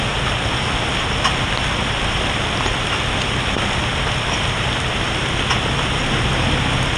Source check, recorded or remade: recorded